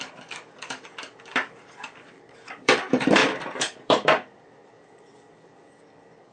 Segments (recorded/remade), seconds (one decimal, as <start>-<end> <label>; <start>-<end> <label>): 0.0-6.3 remade